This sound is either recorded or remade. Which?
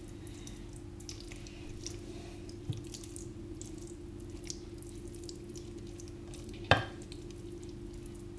recorded